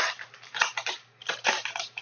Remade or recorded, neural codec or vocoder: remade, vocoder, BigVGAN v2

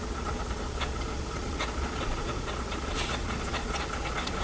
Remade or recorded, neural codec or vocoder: remade, vocoder, Vocos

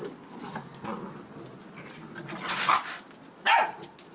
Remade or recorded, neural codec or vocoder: recorded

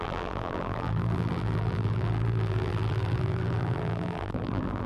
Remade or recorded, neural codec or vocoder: remade, vocoder, BigVGAN v2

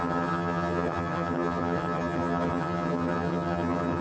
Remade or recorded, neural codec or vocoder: remade, vocoder, HiFi-GAN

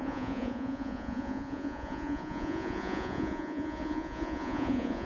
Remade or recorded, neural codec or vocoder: remade, vocoder, Vocos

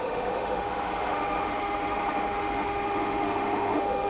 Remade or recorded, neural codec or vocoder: remade, autoencoder, DAC-VAE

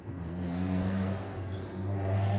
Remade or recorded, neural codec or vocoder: remade, codec, SNAC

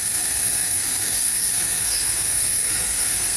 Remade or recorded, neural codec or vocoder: remade, codec, SNAC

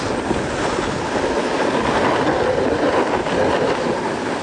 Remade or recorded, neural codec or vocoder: recorded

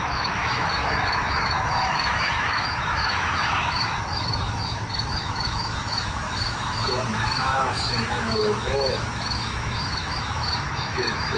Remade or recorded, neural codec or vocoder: remade, autoencoder, DAC-VAE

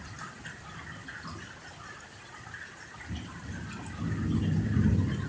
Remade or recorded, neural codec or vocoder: recorded